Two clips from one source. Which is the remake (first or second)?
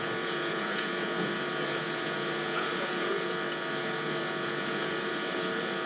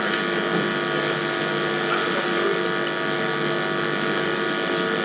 first